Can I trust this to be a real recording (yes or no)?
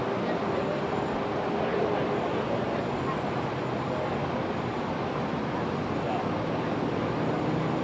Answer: yes